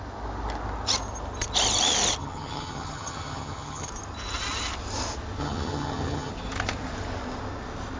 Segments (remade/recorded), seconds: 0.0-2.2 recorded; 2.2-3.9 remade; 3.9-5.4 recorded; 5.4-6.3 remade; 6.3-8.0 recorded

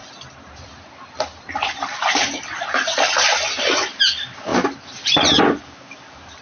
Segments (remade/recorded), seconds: 0.0-6.4 recorded

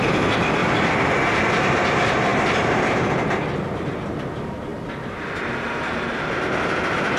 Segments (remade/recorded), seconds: 0.0-7.2 recorded

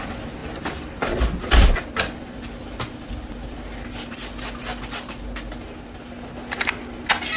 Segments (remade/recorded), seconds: 0.0-7.4 recorded

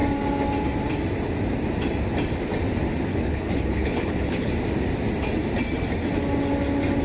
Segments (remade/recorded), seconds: 0.0-3.1 recorded; 3.1-4.5 remade; 4.5-7.0 recorded

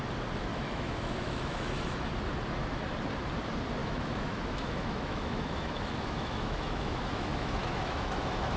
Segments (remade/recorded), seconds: 0.0-0.5 recorded; 0.5-2.1 remade; 2.1-3.8 recorded; 3.8-8.6 remade

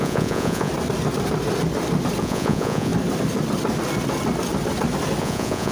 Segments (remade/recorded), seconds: 0.0-0.7 remade; 0.7-2.2 recorded; 2.2-2.9 remade; 2.9-5.2 recorded; 5.2-5.7 remade